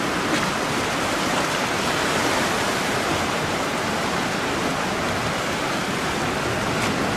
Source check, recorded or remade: recorded